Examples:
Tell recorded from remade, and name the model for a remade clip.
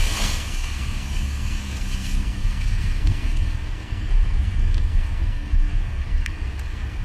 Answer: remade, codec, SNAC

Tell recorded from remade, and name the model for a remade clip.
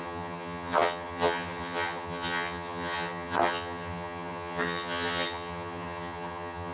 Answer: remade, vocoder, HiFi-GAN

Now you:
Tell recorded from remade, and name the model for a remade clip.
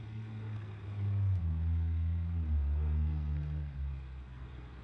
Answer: remade, codec, SNAC